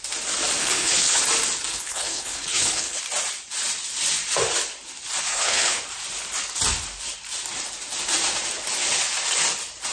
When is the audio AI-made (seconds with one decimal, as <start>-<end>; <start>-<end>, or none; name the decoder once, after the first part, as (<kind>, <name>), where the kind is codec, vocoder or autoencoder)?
0.6-1.2 (codec, HILCodec); 1.7-3.0; 5.3-5.8